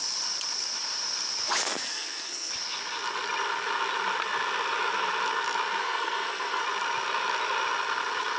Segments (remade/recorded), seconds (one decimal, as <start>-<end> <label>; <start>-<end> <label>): 0.0-1.9 recorded; 1.9-2.5 remade; 2.5-5.8 recorded; 5.8-6.6 remade; 6.6-8.4 recorded